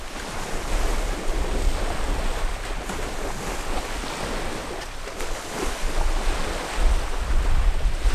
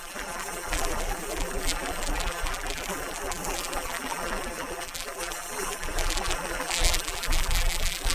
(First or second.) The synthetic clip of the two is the second